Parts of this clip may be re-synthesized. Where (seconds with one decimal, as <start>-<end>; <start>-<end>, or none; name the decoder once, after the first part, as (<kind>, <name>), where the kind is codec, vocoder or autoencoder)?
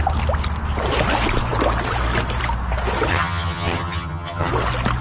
3.1-4.5 (vocoder, HiFi-GAN)